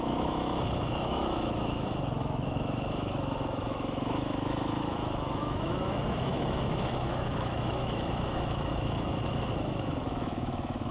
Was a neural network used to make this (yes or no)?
yes